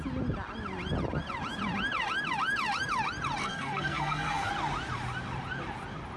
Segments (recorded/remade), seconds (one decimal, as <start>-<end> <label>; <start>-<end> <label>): 0.0-3.4 recorded; 3.4-4.5 remade; 4.5-6.2 recorded